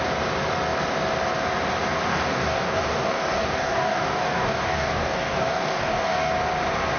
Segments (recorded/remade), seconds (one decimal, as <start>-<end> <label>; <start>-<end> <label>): 0.0-2.1 recorded; 2.1-6.3 remade; 6.3-7.0 recorded